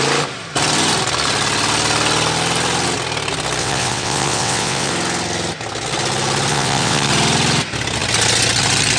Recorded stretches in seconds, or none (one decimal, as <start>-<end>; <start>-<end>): 0.0-3.6; 4.9-6.5; 7.1-9.0